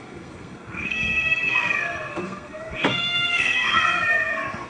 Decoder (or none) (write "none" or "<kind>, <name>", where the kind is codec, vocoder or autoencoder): codec, SNAC